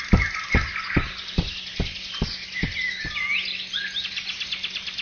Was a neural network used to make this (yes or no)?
no